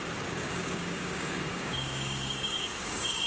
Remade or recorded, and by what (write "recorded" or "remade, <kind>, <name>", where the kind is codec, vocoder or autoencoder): remade, codec, DAC